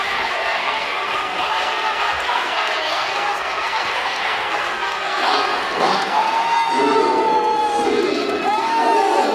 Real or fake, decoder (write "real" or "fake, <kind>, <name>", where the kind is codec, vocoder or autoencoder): fake, codec, SNAC